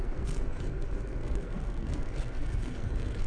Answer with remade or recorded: remade